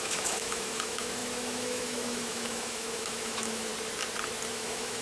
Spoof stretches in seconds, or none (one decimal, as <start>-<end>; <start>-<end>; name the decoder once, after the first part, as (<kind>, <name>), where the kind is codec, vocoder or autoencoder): 0.0-3.7 (autoencoder, DAC-VAE); 4.5-5.0